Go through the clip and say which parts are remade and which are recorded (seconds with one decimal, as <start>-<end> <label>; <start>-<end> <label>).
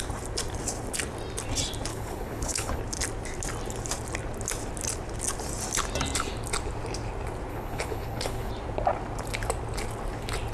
0.0-1.9 recorded; 1.9-2.8 remade; 2.8-7.5 recorded; 7.5-8.5 remade; 8.5-10.5 recorded